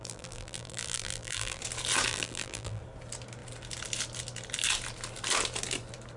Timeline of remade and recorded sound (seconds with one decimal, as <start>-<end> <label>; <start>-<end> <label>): 0.0-1.6 remade; 1.6-2.1 recorded; 2.1-2.8 remade; 2.8-6.2 recorded